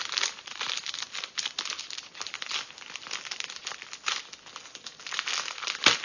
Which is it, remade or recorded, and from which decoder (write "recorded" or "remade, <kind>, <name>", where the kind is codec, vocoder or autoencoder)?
recorded